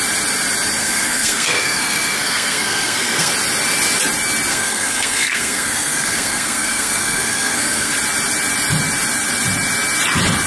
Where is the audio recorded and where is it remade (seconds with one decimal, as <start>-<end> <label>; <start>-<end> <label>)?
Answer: 0.0-0.8 recorded; 0.8-3.3 remade; 3.3-4.5 recorded; 4.5-7.9 remade; 7.9-10.5 recorded